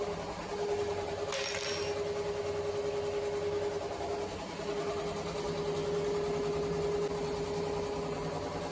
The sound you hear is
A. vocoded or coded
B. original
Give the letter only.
B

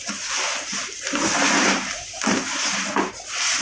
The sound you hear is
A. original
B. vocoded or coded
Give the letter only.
B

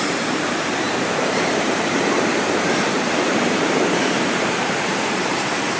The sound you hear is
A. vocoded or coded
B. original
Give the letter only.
A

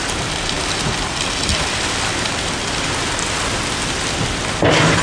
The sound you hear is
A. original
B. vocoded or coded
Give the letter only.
A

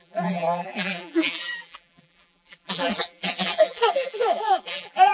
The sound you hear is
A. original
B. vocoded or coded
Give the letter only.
B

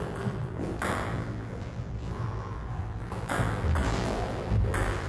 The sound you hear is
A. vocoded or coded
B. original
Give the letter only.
A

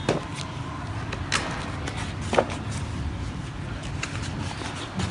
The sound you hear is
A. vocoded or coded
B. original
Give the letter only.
B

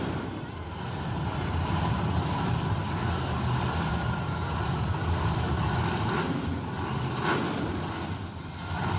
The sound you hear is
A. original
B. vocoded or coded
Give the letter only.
B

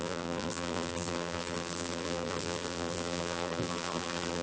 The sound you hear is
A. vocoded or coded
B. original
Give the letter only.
A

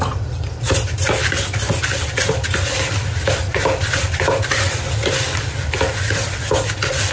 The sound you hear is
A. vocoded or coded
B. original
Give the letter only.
A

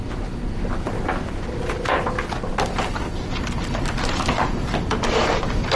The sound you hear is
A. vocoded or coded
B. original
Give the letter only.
B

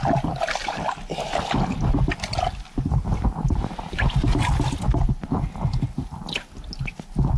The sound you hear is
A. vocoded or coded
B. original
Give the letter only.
B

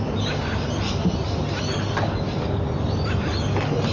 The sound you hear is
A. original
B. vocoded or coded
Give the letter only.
A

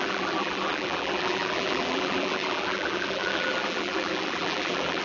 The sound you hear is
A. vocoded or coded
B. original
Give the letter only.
A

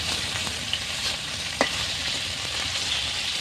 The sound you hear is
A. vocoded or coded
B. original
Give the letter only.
A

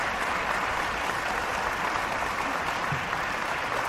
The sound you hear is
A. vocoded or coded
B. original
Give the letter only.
B